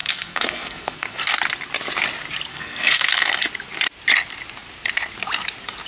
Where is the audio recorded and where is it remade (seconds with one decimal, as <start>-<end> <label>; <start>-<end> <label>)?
0.0-1.3 remade; 1.3-2.5 recorded; 2.5-3.4 remade; 3.4-5.9 recorded